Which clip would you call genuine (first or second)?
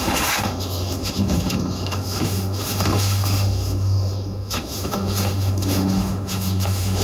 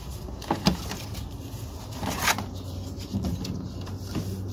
second